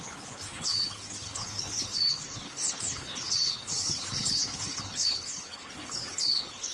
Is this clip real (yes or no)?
no